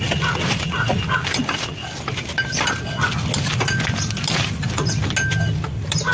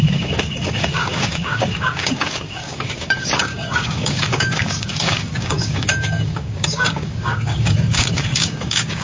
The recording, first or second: first